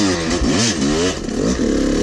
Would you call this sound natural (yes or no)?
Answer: yes